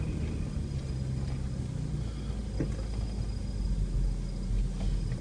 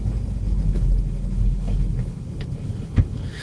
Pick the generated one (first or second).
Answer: second